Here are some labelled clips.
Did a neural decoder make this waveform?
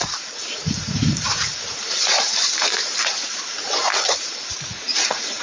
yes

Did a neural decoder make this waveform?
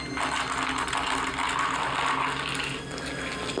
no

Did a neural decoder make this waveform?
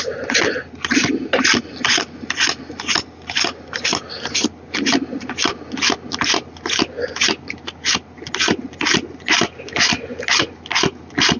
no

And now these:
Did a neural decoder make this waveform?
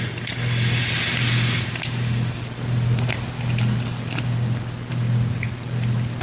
no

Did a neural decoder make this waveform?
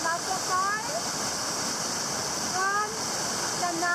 no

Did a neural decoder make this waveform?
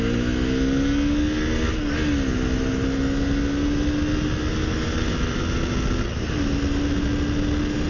no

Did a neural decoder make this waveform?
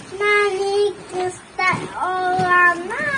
no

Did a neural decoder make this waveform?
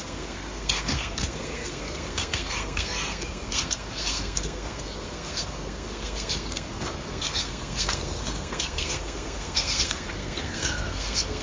yes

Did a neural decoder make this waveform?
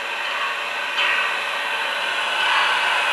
no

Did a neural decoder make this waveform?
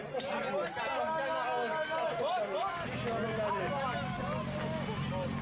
no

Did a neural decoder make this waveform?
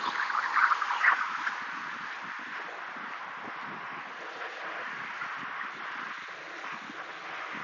no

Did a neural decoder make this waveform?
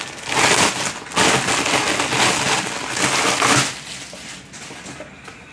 no